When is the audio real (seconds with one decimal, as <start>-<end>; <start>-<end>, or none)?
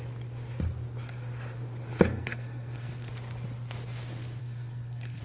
0.0-2.1; 3.1-4.4